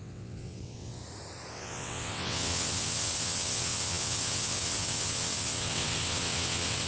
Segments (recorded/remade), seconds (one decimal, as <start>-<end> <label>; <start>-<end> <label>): 0.0-1.0 remade; 1.0-1.5 recorded; 1.5-6.9 remade